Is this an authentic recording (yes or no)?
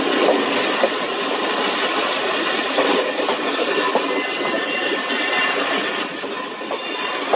yes